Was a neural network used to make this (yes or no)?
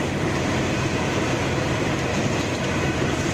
yes